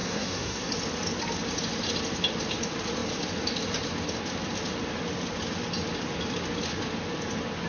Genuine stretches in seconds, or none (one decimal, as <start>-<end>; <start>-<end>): 0.7-7.7